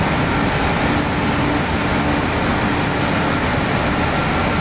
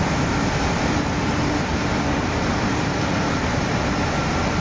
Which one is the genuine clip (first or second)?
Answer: first